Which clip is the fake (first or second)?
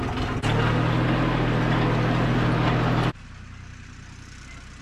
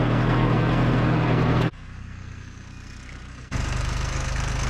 second